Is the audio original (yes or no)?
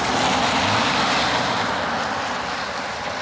yes